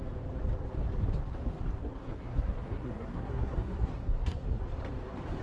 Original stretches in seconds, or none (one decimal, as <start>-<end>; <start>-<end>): 0.0-1.8; 4.6-5.4